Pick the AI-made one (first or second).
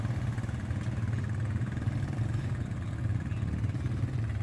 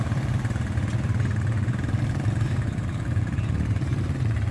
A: second